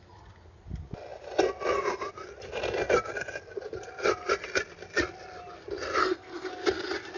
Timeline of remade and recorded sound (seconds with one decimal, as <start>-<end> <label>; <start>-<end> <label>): 0.0-6.0 recorded; 6.0-6.5 remade; 6.5-7.2 recorded